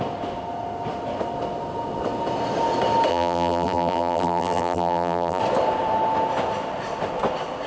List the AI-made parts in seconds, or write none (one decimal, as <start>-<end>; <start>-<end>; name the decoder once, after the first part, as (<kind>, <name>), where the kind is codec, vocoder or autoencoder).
3.1-5.4 (vocoder, BigVGAN v2)